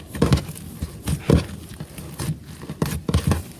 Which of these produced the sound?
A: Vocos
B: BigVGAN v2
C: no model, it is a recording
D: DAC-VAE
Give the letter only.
C